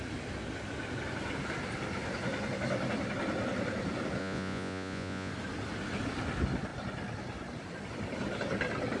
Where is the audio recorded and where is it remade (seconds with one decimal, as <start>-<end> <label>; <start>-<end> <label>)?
0.0-4.2 recorded; 4.2-5.3 remade; 5.3-9.0 recorded

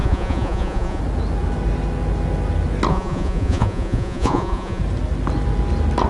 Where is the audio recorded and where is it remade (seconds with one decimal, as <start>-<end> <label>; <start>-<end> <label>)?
0.0-1.0 remade; 1.0-2.9 recorded; 2.9-4.8 remade; 4.8-6.1 recorded

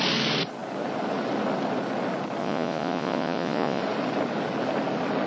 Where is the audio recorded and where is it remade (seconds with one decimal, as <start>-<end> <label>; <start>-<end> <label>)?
0.0-2.4 recorded; 2.4-3.8 remade; 3.8-5.3 recorded

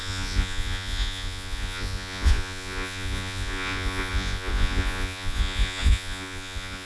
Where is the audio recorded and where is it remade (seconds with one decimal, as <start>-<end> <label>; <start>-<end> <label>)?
0.0-6.9 remade